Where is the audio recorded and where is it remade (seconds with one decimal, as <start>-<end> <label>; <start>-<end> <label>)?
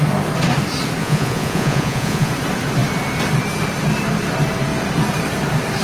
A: 0.0-1.0 recorded; 1.0-2.3 remade; 2.3-5.8 recorded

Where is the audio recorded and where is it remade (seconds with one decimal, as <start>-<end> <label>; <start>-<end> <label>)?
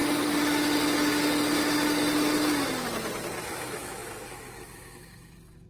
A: 0.0-3.4 recorded; 3.4-5.7 remade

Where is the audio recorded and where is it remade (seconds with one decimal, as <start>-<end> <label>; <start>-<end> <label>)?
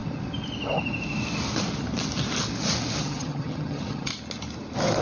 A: 0.0-3.0 recorded; 3.0-4.1 remade; 4.1-5.0 recorded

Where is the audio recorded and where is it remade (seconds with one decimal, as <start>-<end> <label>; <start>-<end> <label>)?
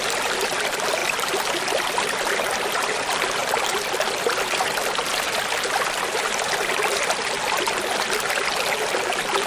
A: 0.0-1.0 recorded; 1.0-2.5 remade; 2.5-9.5 recorded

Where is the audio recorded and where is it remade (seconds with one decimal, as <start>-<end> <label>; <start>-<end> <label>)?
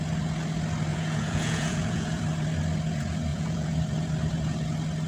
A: 0.0-0.9 recorded; 0.9-2.2 remade; 2.2-3.3 recorded; 3.3-3.8 remade; 3.8-5.1 recorded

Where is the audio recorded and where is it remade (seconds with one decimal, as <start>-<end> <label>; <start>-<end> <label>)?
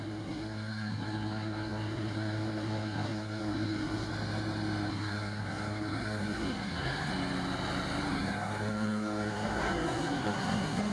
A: 0.0-4.1 remade; 4.1-4.9 recorded; 4.9-7.1 remade; 7.1-8.1 recorded; 8.1-10.9 remade